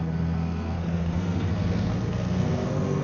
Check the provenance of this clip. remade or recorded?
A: remade